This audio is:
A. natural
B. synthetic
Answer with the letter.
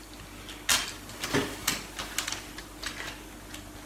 A